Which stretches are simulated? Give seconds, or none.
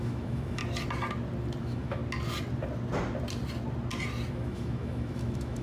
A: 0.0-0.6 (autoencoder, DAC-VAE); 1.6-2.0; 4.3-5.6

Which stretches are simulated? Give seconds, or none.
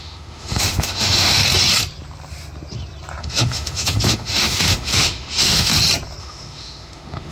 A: 0.0-1.4 (autoencoder, DAC-VAE); 3.2-5.7; 6.2-7.3